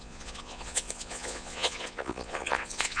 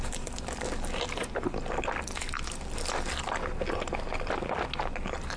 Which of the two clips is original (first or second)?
second